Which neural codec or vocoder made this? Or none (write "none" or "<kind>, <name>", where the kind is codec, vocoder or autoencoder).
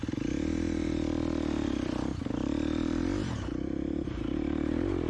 vocoder, BigVGAN v2